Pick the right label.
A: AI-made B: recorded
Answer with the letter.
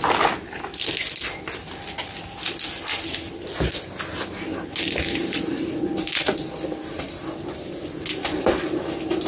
B